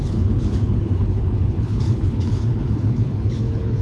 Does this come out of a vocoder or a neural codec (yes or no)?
yes